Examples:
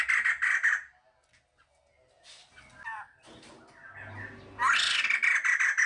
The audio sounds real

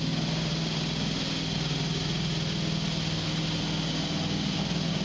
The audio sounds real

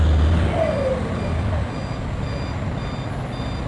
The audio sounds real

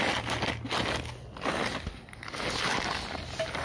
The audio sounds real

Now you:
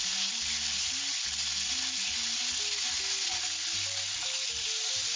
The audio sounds real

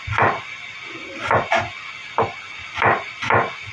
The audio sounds real